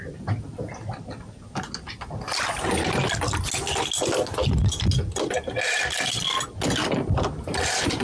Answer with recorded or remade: recorded